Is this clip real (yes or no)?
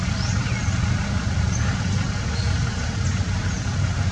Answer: yes